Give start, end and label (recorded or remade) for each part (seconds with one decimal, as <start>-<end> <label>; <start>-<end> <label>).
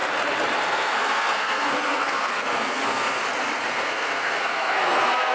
0.0-0.6 recorded; 0.6-3.2 remade; 3.2-3.7 recorded; 3.7-5.3 remade